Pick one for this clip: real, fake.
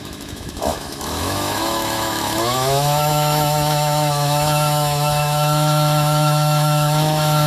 fake